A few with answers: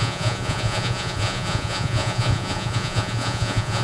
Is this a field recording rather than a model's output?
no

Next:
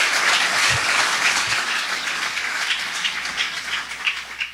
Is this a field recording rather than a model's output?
no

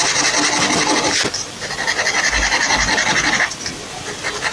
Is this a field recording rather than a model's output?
yes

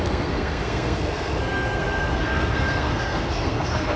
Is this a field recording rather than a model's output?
no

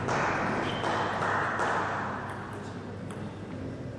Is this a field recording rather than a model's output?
yes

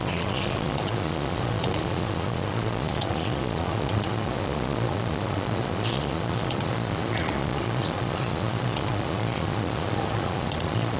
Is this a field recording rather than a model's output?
no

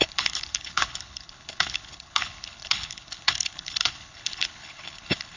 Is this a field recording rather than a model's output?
no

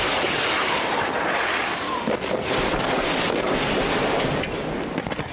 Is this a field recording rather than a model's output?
yes